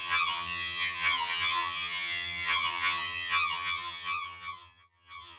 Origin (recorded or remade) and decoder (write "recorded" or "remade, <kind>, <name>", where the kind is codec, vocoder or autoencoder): remade, vocoder, HiFi-GAN